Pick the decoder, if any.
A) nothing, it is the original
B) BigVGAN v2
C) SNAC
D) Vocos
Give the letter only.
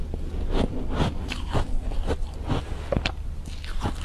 A